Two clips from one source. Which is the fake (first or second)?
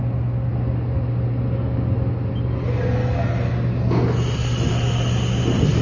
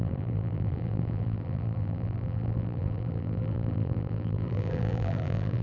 second